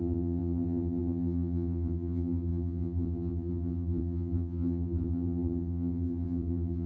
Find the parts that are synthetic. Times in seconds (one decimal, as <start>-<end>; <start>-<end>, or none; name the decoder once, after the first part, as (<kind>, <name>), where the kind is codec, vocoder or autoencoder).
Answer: 0.0-6.9 (vocoder, HiFi-GAN)